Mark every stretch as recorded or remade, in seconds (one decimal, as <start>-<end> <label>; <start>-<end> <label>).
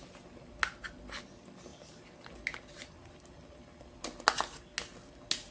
0.0-5.5 recorded